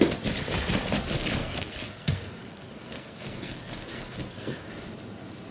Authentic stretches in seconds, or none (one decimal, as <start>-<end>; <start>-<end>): 0.0-1.4; 4.7-5.5